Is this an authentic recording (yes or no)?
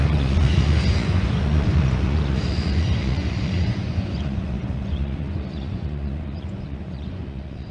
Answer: no